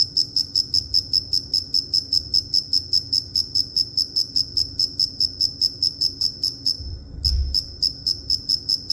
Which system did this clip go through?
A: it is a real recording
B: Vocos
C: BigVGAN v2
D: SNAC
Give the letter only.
A